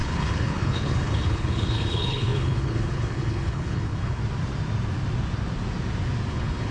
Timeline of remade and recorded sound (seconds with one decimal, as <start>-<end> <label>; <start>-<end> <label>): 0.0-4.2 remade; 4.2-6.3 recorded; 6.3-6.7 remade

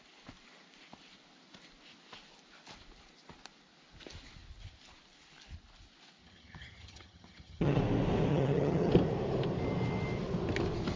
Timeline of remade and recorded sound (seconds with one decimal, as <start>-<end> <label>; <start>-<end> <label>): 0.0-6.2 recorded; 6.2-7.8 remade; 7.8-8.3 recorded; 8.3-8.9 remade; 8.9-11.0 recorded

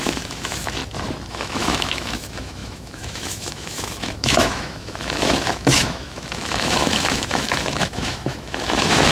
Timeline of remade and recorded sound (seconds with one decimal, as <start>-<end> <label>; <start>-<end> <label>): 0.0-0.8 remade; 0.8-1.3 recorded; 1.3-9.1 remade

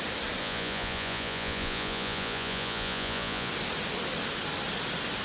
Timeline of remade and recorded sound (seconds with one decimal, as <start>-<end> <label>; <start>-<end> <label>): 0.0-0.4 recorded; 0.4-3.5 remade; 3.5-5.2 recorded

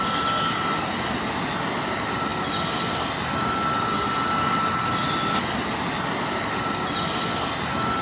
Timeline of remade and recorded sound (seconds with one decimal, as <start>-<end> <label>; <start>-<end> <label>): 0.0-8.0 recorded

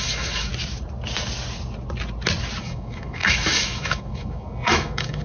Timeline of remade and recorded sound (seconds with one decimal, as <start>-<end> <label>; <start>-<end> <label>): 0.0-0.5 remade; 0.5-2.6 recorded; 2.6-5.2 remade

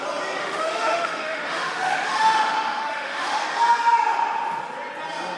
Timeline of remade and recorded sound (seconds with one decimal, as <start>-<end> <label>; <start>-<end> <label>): 0.0-0.4 recorded; 0.4-3.6 remade; 3.6-5.4 recorded